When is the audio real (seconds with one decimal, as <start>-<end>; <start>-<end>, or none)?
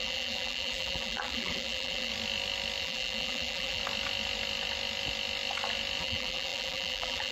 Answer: 2.1-2.8; 3.8-6.0